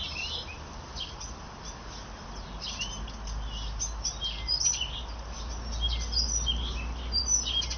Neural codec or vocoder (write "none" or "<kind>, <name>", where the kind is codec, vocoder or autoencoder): none